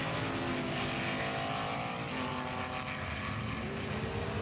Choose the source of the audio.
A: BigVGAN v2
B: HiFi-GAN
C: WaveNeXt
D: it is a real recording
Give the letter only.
D